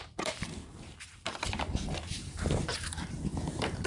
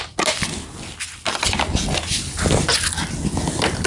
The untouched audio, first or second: second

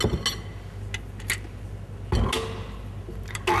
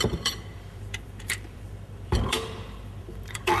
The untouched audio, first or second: first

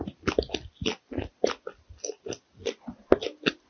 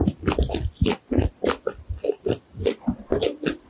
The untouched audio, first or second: first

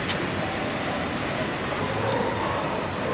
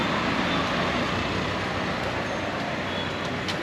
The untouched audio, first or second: second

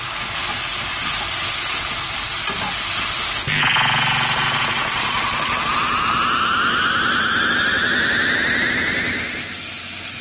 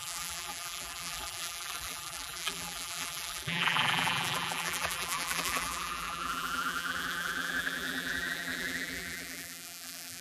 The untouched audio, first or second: first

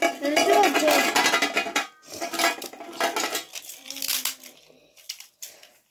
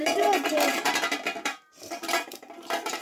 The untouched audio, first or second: first